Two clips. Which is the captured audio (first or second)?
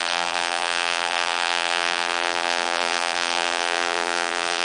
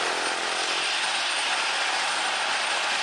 second